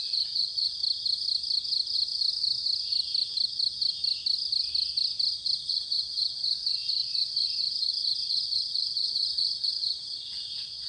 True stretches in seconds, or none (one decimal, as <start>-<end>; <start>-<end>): 0.8-5.6